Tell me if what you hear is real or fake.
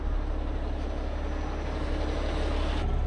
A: real